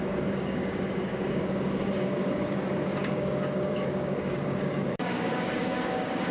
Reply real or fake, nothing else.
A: fake